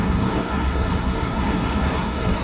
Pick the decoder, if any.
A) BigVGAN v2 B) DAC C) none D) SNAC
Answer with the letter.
D